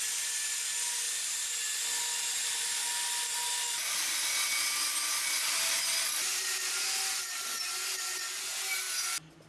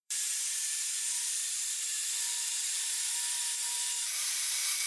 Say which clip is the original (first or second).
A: first